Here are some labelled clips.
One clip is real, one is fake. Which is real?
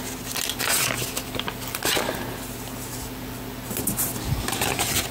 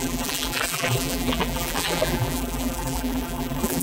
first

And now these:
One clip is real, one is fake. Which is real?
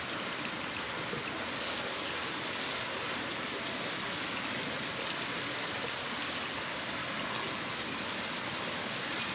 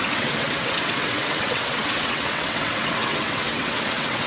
first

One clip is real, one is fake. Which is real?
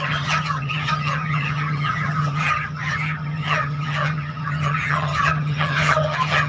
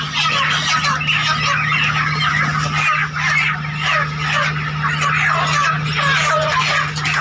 second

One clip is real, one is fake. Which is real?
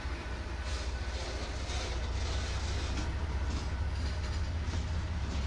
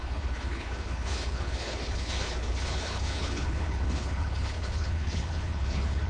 first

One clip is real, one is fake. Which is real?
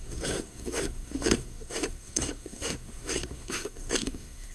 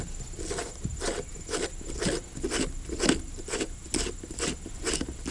second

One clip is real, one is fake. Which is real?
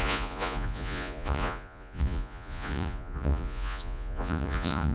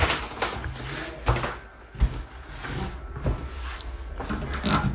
second